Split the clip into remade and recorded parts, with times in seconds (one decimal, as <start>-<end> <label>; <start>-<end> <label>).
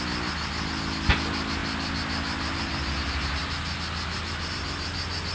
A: 0.0-5.3 recorded